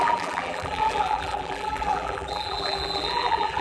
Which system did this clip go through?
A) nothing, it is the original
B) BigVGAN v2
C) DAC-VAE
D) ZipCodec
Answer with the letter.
B